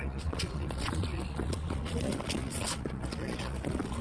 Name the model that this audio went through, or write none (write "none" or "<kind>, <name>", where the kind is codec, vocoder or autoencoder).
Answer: vocoder, Vocos